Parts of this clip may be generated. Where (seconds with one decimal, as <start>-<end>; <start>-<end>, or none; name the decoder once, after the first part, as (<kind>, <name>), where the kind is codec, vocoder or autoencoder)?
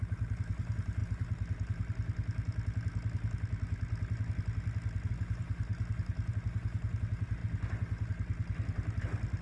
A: none